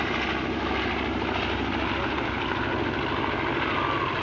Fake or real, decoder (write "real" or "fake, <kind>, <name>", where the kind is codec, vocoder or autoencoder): real